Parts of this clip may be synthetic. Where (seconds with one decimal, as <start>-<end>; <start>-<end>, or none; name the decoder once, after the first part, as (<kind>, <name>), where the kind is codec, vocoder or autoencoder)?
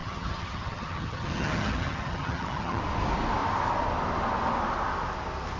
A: 0.0-2.8 (vocoder, HiFi-GAN)